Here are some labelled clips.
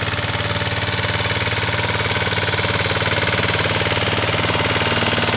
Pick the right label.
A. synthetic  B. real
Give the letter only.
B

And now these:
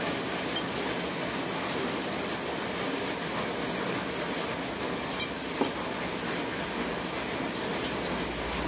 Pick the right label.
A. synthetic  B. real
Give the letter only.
B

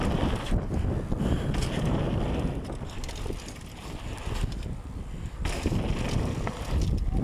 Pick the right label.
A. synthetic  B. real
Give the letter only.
B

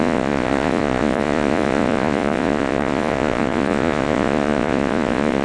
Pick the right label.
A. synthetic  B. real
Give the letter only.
A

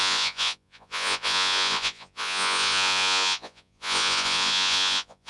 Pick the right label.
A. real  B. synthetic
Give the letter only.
B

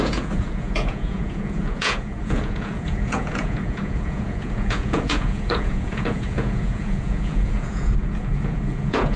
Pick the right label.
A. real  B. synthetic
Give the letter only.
B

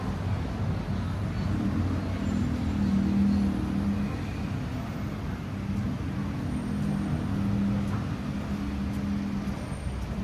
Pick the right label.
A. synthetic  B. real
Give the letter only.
B